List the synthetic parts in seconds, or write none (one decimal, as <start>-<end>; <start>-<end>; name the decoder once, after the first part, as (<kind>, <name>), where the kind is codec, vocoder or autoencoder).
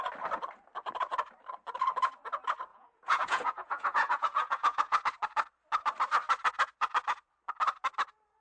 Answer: 2.7-5.0 (vocoder, Vocos)